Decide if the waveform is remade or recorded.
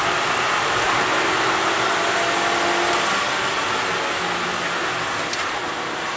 recorded